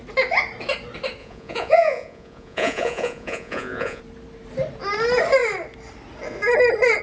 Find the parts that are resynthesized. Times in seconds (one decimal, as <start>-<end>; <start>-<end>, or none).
1.2-4.0